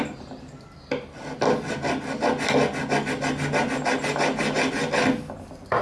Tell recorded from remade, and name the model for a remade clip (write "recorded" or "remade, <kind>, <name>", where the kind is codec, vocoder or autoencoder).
recorded